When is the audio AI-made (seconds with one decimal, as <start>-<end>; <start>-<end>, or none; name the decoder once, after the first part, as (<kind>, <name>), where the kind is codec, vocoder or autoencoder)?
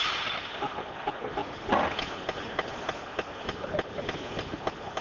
none